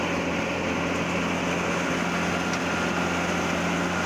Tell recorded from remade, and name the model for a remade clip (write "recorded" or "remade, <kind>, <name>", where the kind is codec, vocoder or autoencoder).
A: recorded